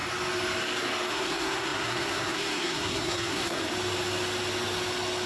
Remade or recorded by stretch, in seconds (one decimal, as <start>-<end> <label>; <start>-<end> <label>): 0.0-1.1 recorded; 1.1-3.6 remade; 3.6-5.3 recorded